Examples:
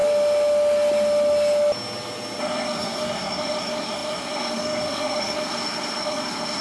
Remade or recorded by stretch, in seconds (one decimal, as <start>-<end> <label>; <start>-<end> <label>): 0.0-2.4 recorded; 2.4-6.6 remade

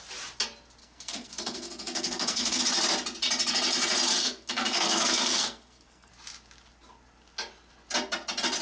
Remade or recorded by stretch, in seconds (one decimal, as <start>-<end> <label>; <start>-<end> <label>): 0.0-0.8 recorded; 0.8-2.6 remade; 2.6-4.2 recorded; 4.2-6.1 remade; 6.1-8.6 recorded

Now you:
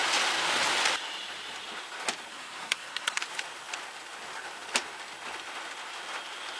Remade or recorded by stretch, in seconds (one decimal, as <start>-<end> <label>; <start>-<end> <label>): 0.0-2.3 recorded; 2.3-3.2 remade; 3.2-6.6 recorded

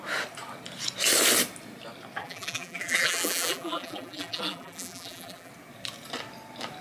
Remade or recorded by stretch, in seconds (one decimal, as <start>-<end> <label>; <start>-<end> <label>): 0.0-2.2 recorded; 2.2-5.5 remade; 5.5-6.8 recorded

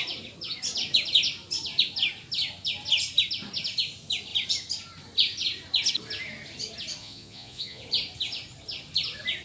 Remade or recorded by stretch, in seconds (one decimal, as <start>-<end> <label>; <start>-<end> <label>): 0.0-7.0 recorded; 7.0-7.8 remade; 7.8-9.4 recorded